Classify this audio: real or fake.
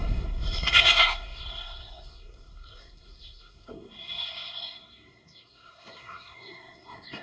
fake